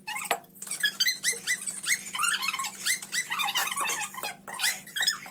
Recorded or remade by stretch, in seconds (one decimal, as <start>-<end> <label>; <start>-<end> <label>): 0.0-5.3 recorded

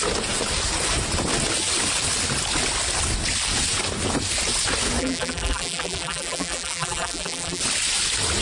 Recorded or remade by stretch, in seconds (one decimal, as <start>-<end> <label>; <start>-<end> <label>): 0.0-5.0 recorded; 5.0-7.6 remade; 7.6-8.4 recorded

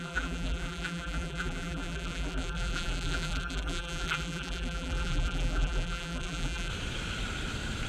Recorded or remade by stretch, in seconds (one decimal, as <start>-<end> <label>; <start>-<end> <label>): 0.0-6.7 remade; 6.7-7.9 recorded

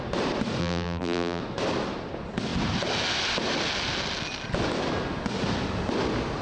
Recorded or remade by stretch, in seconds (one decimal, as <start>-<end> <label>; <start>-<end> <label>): 0.0-0.6 recorded; 0.6-1.4 remade; 1.4-6.4 recorded

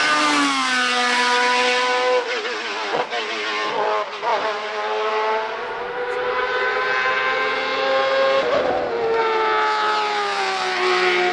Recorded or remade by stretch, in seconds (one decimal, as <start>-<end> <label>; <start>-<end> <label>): 0.0-11.3 recorded